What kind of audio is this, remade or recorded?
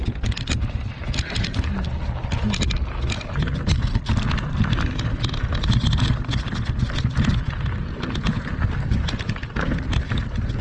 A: recorded